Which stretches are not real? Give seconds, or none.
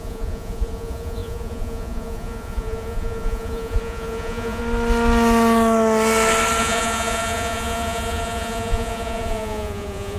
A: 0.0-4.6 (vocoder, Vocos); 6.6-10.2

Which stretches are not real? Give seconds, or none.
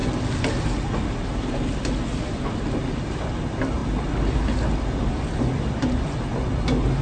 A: none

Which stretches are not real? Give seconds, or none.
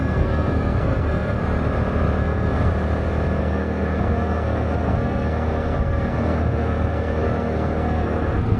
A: 0.0-1.4 (codec, SNAC); 2.2-2.7; 3.4-8.6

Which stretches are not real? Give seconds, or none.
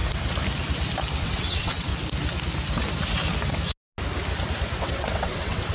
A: 1.2-1.9 (vocoder, WaveNeXt); 4.8-5.7